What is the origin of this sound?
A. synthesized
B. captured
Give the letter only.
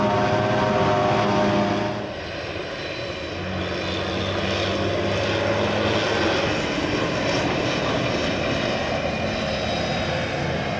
B